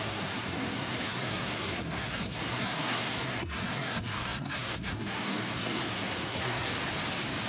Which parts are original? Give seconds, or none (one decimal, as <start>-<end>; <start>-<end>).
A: 6.7-7.5